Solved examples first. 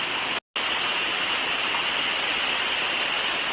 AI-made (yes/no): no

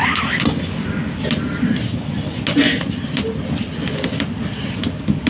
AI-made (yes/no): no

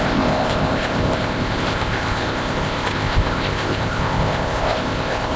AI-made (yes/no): yes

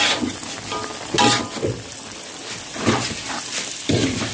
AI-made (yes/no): no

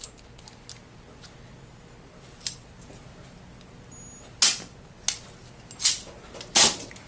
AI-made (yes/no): no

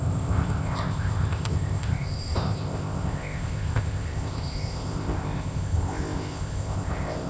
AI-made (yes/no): yes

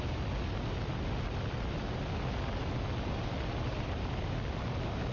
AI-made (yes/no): no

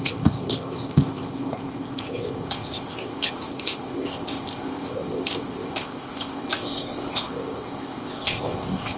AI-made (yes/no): yes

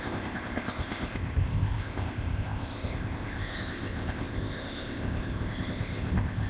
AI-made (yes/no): yes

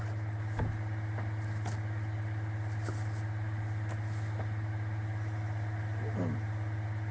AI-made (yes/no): no